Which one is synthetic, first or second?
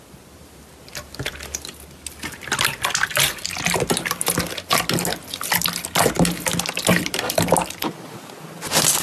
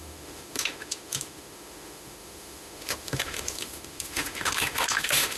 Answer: second